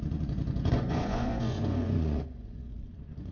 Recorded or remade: remade